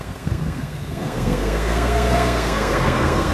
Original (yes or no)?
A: no